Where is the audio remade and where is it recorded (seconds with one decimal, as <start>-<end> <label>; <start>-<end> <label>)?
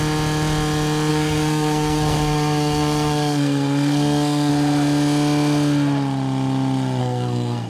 0.0-1.1 recorded; 1.1-4.5 remade; 4.5-7.0 recorded; 7.0-7.7 remade